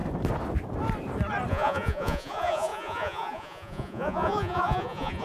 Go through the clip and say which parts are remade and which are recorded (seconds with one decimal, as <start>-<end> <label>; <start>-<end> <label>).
0.0-1.5 recorded; 1.5-5.2 remade